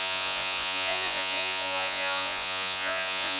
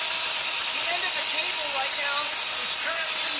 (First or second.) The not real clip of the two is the first